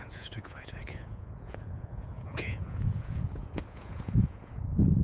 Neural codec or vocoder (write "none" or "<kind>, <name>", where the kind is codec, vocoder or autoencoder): vocoder, Vocos